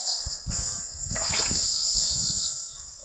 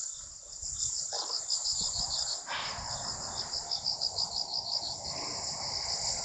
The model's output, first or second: first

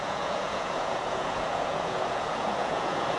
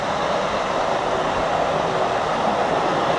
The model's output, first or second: first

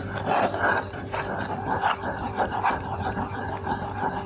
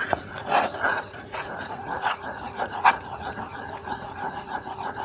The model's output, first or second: second